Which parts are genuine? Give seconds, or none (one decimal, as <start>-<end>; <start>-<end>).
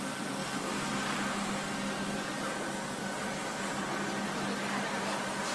0.0-5.5